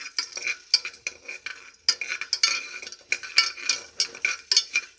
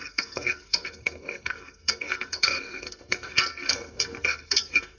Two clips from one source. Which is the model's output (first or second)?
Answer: second